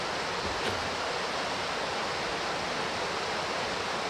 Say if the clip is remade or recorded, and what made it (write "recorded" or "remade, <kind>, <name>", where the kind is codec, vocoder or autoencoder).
recorded